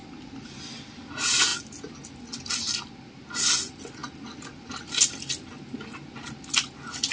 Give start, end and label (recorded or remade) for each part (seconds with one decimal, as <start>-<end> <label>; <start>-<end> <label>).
0.0-7.1 recorded